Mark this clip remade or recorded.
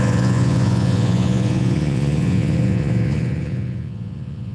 remade